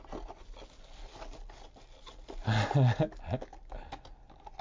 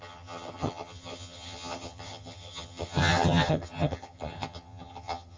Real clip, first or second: first